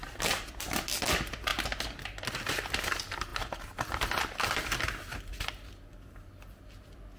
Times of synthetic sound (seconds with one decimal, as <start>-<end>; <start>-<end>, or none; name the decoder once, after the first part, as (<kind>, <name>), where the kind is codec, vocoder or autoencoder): none